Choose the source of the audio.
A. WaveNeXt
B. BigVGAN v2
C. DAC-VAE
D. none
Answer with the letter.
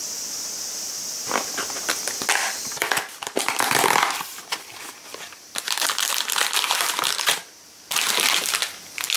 D